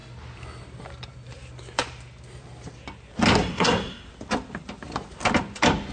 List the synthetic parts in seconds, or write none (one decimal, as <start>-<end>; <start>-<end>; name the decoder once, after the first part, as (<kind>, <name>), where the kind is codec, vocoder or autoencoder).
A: 3.4-4.1 (codec, SNAC)